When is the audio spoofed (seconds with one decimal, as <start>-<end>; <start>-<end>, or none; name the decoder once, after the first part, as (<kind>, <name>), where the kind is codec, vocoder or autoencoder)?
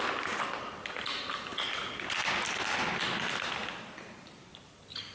0.0-3.6 (vocoder, BigVGAN v2); 4.4-5.1